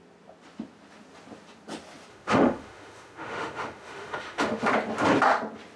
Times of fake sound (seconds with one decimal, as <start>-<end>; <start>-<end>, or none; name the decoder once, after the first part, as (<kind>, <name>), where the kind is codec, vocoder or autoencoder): 2.1-4.7 (autoencoder, DAC-VAE)